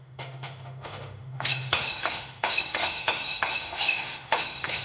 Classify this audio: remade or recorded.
remade